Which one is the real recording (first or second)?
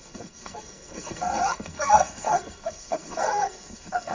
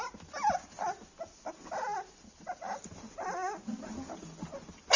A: second